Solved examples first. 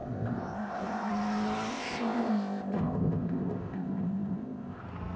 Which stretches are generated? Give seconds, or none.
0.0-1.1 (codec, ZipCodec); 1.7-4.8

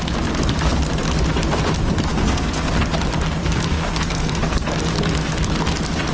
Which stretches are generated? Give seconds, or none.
2.1-2.7 (codec, SNAC); 3.4-4.6